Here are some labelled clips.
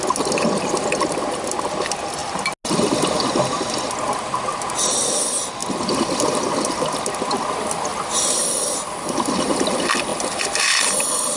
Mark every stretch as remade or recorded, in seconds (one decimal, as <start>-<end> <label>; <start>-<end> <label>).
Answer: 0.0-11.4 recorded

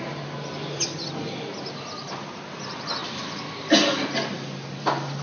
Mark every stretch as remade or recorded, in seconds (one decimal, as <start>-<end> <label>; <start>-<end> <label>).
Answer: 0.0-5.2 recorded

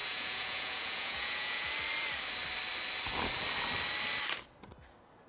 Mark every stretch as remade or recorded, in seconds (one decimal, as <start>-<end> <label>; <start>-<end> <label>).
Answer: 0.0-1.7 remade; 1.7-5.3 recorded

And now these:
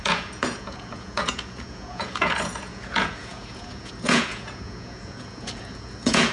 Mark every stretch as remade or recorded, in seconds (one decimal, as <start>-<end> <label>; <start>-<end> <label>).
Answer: 0.0-6.3 remade